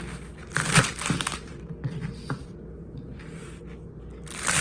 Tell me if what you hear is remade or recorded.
recorded